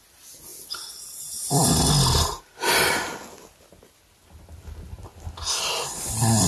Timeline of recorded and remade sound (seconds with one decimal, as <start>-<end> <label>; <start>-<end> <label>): 0.0-6.5 recorded